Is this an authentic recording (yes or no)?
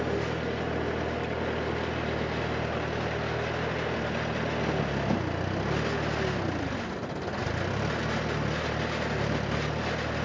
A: yes